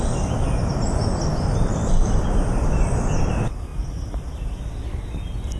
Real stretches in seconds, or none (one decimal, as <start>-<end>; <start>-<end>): 0.0-5.6